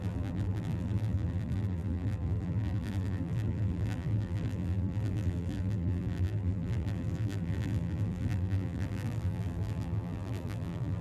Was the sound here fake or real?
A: fake